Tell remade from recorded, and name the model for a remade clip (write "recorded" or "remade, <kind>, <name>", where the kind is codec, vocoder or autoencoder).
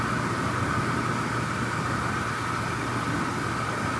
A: recorded